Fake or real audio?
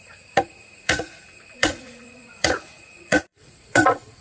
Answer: fake